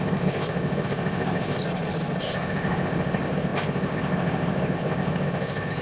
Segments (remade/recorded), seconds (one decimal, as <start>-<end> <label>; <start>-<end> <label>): 0.0-1.6 remade; 1.6-2.2 recorded; 2.2-5.8 remade